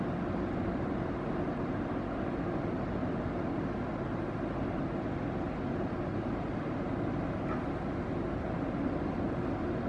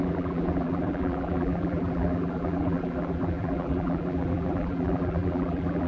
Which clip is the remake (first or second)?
second